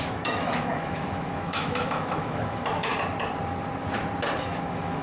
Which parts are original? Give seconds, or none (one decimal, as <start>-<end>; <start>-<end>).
2.9-4.4